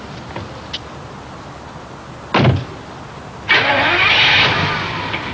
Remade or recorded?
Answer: recorded